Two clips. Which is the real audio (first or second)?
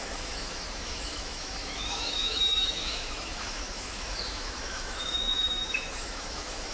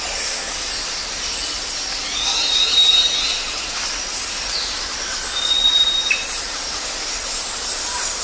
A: second